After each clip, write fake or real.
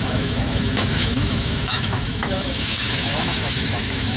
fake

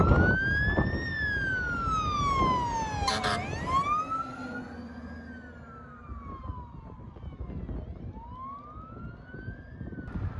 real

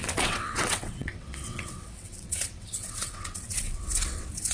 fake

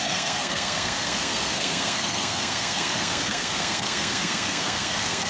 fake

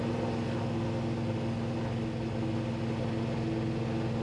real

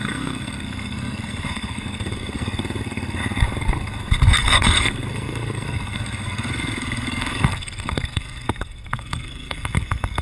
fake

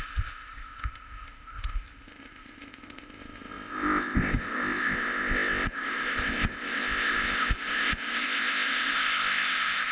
fake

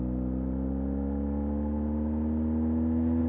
real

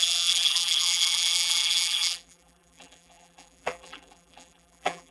fake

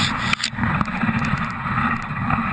real